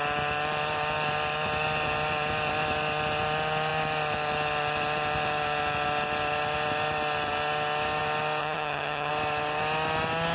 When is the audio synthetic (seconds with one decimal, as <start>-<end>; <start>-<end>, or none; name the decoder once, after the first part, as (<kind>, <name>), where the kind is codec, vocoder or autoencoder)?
8.4-9.1 (vocoder, HiFi-GAN)